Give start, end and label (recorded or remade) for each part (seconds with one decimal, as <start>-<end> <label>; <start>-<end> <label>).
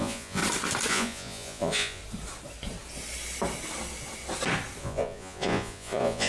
0.0-0.4 remade; 0.4-0.9 recorded; 0.9-2.0 remade; 2.0-4.8 recorded; 4.8-6.3 remade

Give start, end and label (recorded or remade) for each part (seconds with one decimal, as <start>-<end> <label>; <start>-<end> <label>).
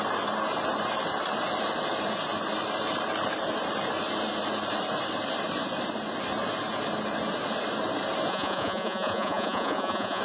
0.0-8.3 recorded; 8.3-10.2 remade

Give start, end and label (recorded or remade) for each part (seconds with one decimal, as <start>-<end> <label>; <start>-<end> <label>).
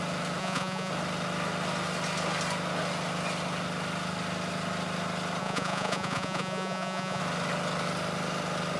0.0-0.4 recorded; 0.4-0.9 remade; 0.9-5.4 recorded; 5.4-7.2 remade; 7.2-8.8 recorded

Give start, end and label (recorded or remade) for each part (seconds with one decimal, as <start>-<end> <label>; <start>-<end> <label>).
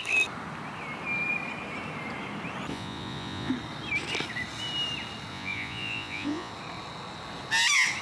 0.0-2.7 recorded; 2.7-3.5 remade; 3.5-5.3 recorded; 5.3-6.5 remade; 6.5-8.0 recorded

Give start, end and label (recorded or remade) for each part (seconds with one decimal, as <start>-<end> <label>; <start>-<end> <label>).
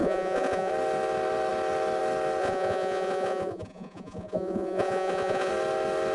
0.0-0.7 remade; 0.7-2.4 recorded; 2.4-5.5 remade; 5.5-6.1 recorded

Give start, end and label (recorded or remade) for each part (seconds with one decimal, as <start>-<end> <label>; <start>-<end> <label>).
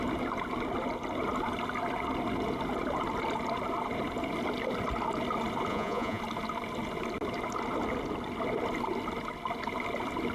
0.0-5.7 recorded; 5.7-6.2 remade; 6.2-10.3 recorded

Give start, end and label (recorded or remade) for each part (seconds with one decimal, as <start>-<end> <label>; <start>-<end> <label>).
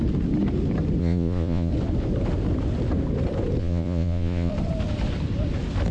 0.0-1.0 recorded; 1.0-1.7 remade; 1.7-3.6 recorded; 3.6-4.5 remade; 4.5-5.9 recorded